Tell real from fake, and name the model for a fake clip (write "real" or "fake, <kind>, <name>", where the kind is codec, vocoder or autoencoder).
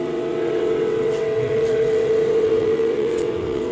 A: fake, vocoder, WaveNeXt